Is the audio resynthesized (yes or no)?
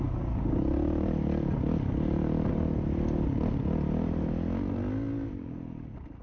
no